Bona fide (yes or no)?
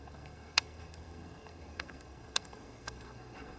no